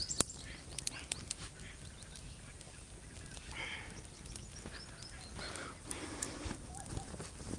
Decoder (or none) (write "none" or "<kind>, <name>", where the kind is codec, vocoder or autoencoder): none